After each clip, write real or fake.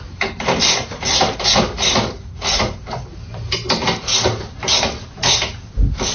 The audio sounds real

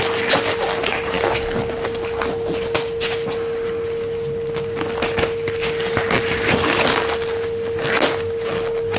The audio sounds real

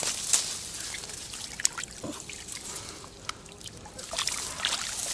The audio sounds real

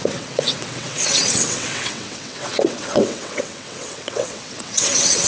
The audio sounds fake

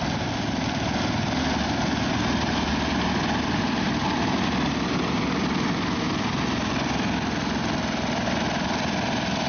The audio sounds real